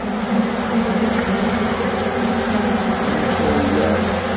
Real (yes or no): yes